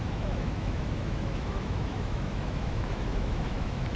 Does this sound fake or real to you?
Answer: fake